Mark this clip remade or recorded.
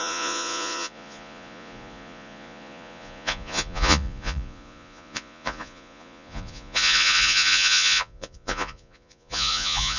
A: remade